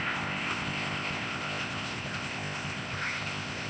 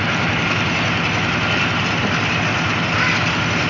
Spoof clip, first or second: first